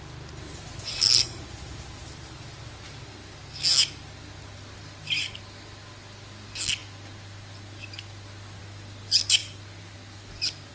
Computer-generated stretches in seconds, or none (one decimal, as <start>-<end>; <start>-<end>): 0.9-1.4